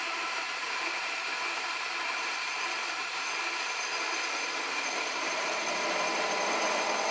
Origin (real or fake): fake